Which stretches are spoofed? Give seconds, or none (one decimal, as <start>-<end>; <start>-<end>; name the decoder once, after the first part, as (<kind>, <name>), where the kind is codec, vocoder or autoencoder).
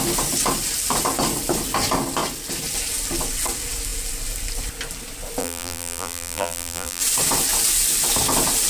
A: 5.4-7.0 (vocoder, BigVGAN v2)